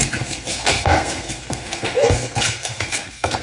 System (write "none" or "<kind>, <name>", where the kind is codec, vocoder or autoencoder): codec, SNAC